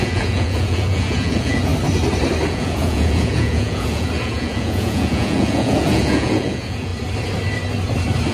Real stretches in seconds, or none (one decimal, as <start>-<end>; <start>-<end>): 1.7-2.5; 6.9-8.3